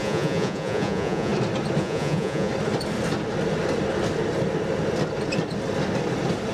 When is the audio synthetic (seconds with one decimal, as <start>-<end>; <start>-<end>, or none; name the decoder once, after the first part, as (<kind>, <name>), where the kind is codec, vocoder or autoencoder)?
0.0-1.3 (vocoder, Vocos); 1.8-2.5